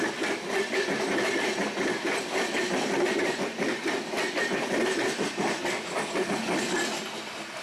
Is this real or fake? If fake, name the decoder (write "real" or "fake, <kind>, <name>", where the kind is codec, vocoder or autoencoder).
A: real